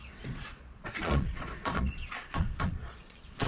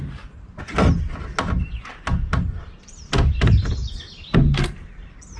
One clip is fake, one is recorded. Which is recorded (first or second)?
second